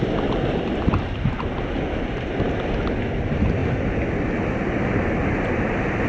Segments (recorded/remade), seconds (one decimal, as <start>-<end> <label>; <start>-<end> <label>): 0.0-6.1 recorded